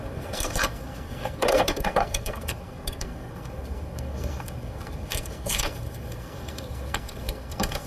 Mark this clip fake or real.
fake